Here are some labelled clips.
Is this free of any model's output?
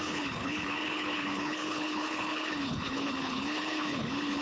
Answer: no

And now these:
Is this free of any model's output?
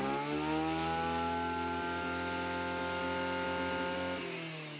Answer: yes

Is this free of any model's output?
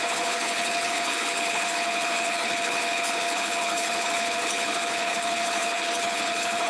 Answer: no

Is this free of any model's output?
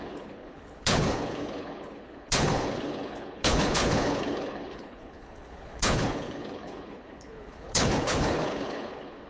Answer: no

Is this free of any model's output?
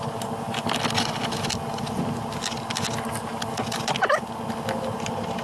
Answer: yes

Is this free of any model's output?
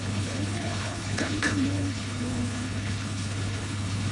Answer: no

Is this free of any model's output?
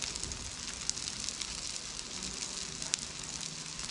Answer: yes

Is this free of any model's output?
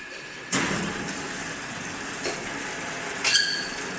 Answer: yes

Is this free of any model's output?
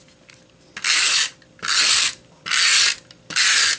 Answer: yes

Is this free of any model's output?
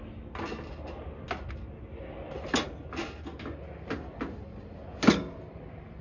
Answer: yes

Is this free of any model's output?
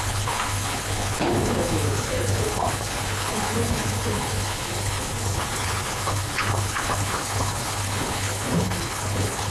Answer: no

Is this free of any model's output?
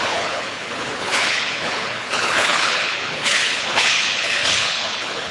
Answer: no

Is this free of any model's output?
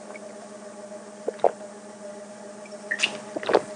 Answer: yes